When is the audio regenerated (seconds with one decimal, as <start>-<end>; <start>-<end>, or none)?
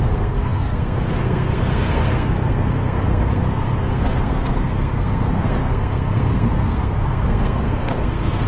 0.0-8.5